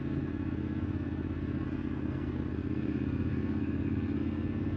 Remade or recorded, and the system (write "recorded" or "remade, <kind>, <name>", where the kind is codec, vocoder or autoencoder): remade, codec, SNAC